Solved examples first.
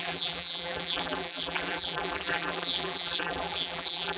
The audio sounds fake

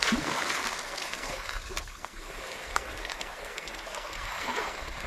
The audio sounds fake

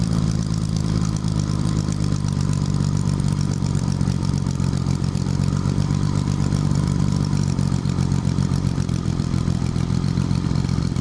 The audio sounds fake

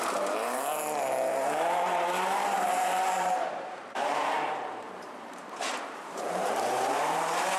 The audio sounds fake